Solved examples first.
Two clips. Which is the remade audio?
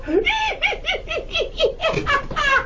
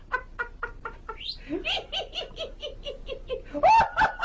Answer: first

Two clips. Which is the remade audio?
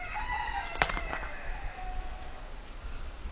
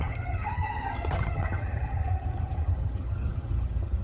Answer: second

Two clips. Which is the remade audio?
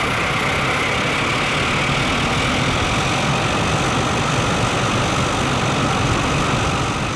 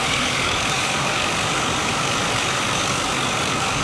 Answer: second